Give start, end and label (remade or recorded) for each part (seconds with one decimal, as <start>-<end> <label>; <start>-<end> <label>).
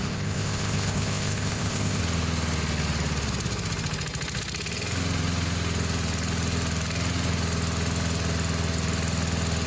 0.0-2.0 remade; 2.0-9.7 recorded